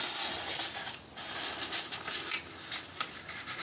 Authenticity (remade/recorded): recorded